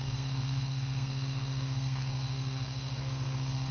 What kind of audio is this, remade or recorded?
remade